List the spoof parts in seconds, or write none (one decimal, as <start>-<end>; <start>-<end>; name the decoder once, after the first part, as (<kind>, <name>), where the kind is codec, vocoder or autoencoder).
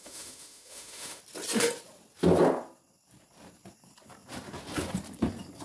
0.0-1.2 (autoencoder, DAC-VAE)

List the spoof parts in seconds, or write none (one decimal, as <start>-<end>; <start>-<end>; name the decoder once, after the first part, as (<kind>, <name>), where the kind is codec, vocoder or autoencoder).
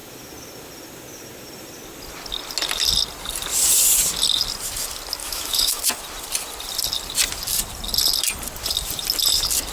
5.2-5.8 (autoencoder, DAC-VAE)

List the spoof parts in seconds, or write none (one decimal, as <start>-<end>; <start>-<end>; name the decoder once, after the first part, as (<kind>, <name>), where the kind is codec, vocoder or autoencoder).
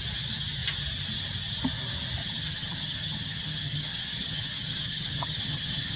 2.2-6.0 (vocoder, HiFi-GAN)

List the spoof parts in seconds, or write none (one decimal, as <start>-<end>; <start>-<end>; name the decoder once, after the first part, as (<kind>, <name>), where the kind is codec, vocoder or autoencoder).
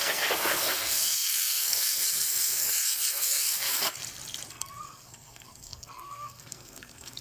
0.0-4.0 (codec, SNAC); 4.5-7.2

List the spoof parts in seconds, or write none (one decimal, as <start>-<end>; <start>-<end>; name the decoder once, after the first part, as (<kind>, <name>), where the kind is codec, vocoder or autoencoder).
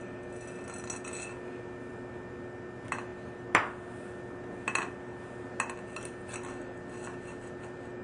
none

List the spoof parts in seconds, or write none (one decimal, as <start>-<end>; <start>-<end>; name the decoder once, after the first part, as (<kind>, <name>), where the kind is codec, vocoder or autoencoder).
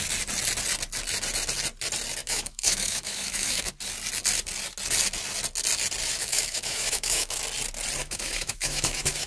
2.2-3.7 (autoencoder, DAC-VAE); 6.2-7.4; 8.0-9.3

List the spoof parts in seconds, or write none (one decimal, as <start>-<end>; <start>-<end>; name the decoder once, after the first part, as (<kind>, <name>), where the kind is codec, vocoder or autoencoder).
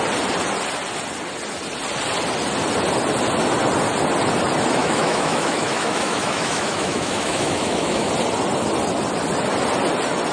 4.8-8.1 (autoencoder, DAC-VAE)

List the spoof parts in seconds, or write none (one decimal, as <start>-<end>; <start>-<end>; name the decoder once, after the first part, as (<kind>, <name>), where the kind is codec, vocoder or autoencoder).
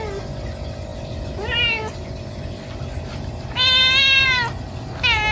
none